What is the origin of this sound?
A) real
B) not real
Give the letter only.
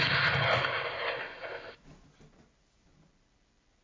A